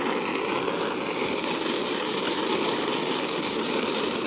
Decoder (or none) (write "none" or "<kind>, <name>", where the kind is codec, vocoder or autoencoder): none